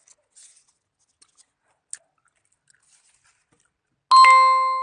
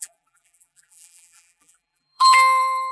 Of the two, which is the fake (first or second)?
second